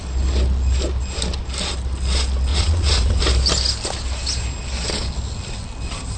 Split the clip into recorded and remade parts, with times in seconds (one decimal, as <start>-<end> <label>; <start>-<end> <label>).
0.0-2.5 recorded; 2.5-3.2 remade; 3.2-6.2 recorded